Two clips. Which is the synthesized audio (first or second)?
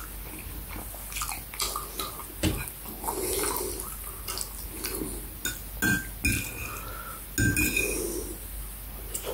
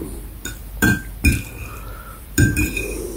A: second